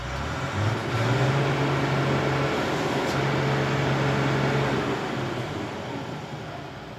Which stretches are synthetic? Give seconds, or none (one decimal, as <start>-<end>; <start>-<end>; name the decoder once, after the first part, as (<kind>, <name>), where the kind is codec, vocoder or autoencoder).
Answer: none